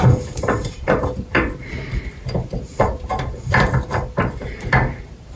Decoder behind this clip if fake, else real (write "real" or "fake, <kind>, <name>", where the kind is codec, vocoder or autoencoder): fake, vocoder, BigVGAN v2